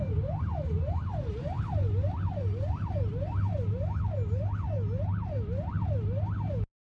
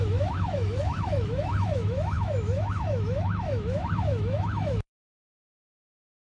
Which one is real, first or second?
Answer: first